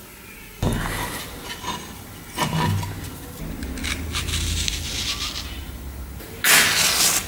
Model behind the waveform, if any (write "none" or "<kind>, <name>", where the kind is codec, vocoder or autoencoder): none